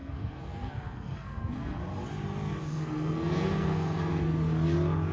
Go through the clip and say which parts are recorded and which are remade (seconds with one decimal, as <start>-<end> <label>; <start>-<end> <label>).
0.0-1.8 remade; 1.8-2.7 recorded; 2.7-4.1 remade; 4.1-5.1 recorded